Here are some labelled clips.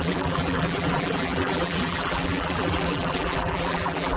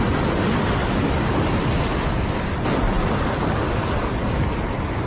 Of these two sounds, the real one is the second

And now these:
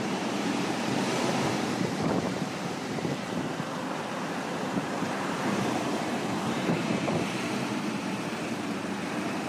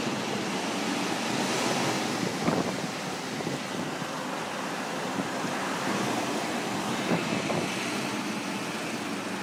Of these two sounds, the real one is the second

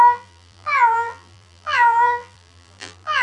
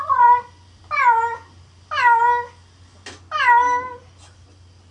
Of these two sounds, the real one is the second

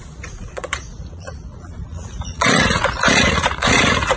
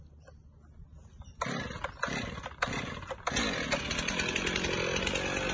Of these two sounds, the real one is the second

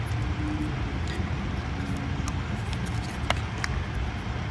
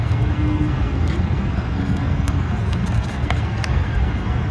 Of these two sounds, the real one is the first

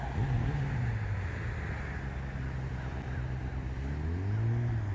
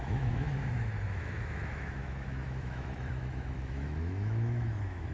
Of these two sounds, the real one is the first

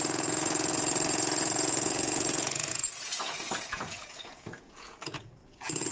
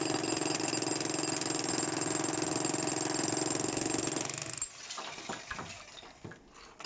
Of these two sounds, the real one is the second